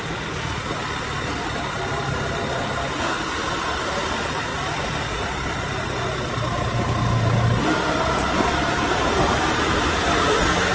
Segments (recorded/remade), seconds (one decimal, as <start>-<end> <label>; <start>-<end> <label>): 0.0-10.7 recorded